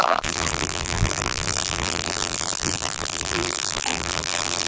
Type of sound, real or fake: fake